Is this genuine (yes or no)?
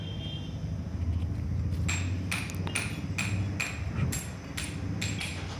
yes